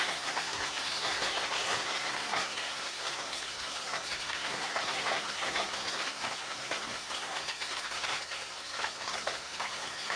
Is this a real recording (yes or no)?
no